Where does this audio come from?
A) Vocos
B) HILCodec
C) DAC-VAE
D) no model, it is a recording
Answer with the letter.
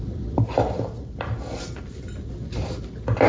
D